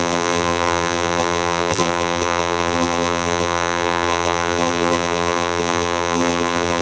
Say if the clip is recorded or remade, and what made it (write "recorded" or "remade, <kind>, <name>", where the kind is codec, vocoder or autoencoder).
remade, vocoder, BigVGAN v2